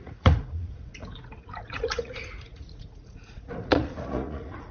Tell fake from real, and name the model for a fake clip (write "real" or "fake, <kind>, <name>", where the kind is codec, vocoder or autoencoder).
fake, vocoder, Vocos